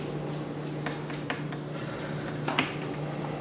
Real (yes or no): yes